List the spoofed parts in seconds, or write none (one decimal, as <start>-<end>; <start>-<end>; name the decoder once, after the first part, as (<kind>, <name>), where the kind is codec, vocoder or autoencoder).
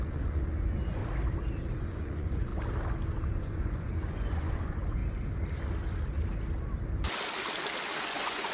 0.0-1.0 (vocoder, Vocos); 1.7-2.5; 3.3-5.0; 8.0-8.5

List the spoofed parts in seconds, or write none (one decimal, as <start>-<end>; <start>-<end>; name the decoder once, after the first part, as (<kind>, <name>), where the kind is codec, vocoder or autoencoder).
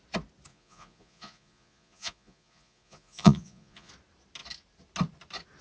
0.5-3.9 (vocoder, Vocos)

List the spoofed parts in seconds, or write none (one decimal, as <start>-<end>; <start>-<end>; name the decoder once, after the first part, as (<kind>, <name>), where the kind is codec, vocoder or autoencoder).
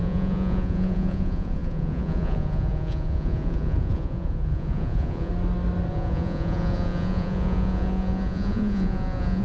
0.0-5.3 (vocoder, Vocos); 5.9-9.4